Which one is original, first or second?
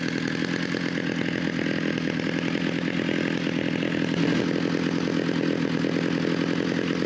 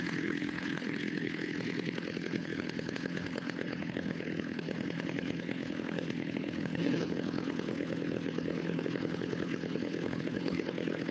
first